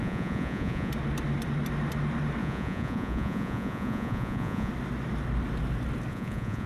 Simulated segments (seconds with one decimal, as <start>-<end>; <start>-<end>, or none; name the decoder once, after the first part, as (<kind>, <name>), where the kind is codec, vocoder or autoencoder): 0.0-0.9 (vocoder, Vocos); 2.4-4.7; 6.1-6.7